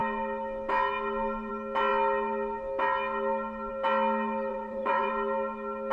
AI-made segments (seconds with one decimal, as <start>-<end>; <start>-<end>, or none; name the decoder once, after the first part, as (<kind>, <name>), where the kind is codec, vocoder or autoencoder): 4.5-5.1 (vocoder, Vocos)